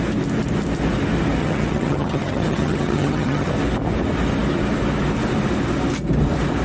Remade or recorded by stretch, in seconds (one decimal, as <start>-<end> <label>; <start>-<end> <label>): 0.0-1.4 recorded; 1.4-3.5 remade; 3.5-6.6 recorded